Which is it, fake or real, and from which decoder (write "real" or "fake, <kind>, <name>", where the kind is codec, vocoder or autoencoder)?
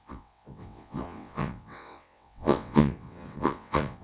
fake, vocoder, WaveNeXt